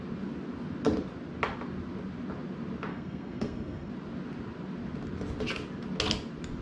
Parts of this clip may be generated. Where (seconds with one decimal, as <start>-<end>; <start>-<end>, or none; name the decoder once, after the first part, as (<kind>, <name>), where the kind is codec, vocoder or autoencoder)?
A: 2.9-3.9 (codec, SNAC)